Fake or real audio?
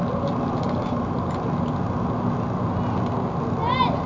real